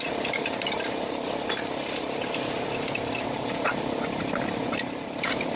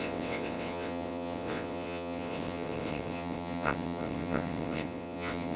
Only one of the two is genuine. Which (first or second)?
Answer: first